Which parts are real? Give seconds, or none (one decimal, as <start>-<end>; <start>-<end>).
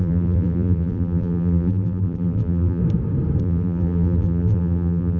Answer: 2.8-3.4